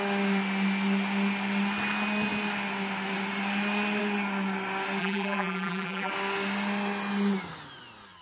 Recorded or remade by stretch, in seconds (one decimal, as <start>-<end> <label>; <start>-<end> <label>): 0.0-5.0 recorded; 5.0-6.1 remade; 6.1-8.2 recorded